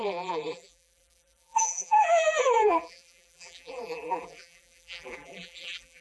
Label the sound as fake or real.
fake